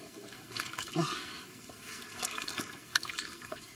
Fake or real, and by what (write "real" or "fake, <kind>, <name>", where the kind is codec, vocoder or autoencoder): fake, codec, SNAC